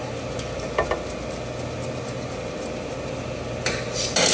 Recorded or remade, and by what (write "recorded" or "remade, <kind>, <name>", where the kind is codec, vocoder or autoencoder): recorded